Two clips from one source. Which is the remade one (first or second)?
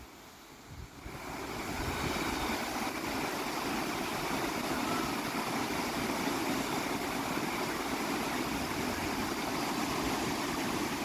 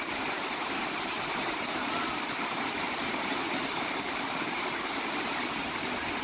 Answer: second